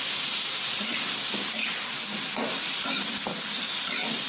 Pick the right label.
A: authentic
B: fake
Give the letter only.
A